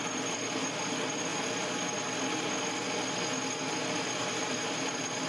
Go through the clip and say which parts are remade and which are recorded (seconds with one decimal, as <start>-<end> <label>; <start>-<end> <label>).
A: 0.0-1.3 remade; 1.3-4.5 recorded; 4.5-5.3 remade